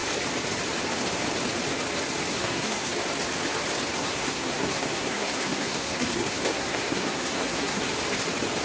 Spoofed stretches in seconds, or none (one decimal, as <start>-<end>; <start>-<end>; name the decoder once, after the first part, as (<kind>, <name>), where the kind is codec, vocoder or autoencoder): 2.3-2.9 (codec, SNAC); 4.0-7.8